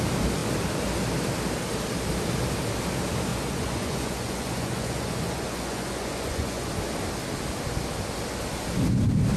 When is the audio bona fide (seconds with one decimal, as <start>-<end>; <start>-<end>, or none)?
0.0-3.3; 6.7-9.4